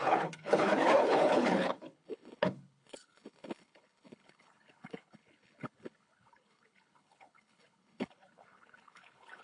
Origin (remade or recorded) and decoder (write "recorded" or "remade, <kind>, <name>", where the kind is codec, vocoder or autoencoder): remade, codec, HILCodec